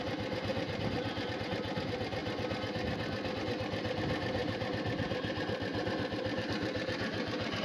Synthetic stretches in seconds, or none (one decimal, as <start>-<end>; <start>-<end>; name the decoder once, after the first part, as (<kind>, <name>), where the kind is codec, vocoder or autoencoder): 0.5-1.3 (vocoder, BigVGAN v2); 4.4-7.6